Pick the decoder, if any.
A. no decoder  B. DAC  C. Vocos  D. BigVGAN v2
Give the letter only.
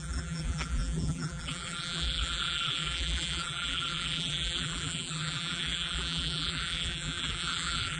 D